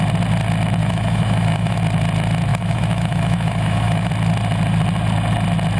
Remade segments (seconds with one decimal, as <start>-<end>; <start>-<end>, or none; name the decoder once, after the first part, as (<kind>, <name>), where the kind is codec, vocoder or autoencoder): 0.8-1.8 (autoencoder, DAC-VAE); 2.5-4.1